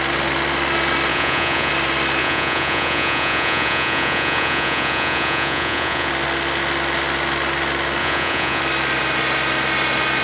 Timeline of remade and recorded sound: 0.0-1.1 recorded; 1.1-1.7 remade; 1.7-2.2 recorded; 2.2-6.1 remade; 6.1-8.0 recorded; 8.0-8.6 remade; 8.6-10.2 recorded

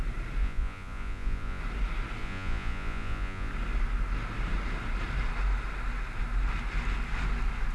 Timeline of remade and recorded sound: 0.0-0.4 recorded; 0.4-1.6 remade; 1.6-2.2 recorded; 2.2-3.5 remade; 3.5-7.7 recorded

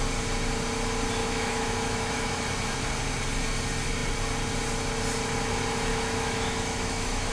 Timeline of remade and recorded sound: 0.0-1.2 recorded; 1.2-2.4 remade; 2.4-5.9 recorded; 5.9-7.3 remade

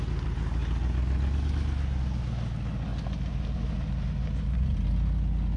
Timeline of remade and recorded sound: 0.0-5.6 recorded

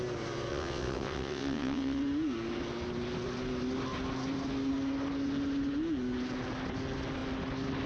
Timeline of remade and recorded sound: 0.0-0.5 recorded; 0.5-2.0 remade; 2.0-7.9 recorded

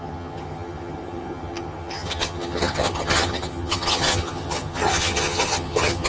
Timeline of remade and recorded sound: 0.0-6.1 remade

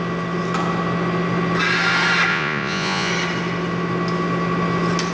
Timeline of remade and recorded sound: 0.0-2.3 recorded; 2.3-3.1 remade; 3.1-5.1 recorded

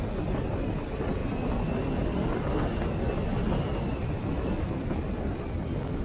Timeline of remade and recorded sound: 0.0-6.0 recorded